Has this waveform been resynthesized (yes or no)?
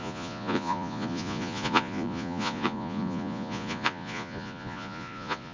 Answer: yes